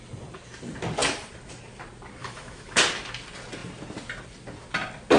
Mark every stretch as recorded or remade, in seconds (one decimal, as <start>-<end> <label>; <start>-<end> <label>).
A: 0.0-2.2 recorded; 2.2-2.8 remade; 2.8-5.2 recorded

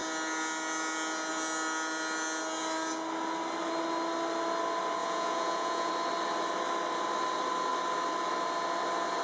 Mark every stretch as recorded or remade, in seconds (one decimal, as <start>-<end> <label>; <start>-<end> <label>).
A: 0.0-5.0 recorded; 5.0-5.9 remade; 5.9-9.2 recorded

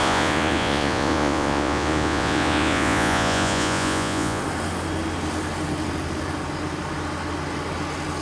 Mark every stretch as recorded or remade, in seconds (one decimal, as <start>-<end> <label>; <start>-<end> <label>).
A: 0.0-4.4 remade; 4.4-8.2 recorded

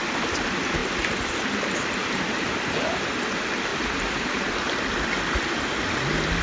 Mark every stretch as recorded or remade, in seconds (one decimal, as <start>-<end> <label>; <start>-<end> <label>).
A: 0.0-6.4 recorded

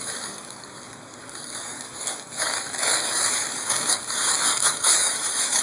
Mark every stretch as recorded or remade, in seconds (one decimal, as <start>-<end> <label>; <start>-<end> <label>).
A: 0.0-5.6 remade

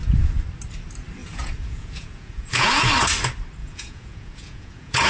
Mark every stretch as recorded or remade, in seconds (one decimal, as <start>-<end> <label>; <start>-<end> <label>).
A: 0.0-1.2 recorded; 1.2-2.9 remade; 2.9-3.6 recorded; 3.6-5.1 remade

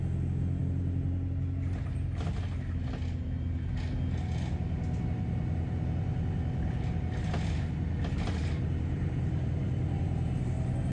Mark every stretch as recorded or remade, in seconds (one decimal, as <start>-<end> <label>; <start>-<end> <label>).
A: 0.0-10.9 recorded